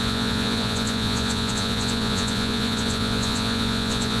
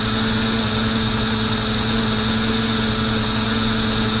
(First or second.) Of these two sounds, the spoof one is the first